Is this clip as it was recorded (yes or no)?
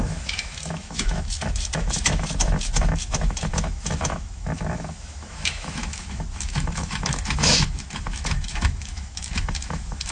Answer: no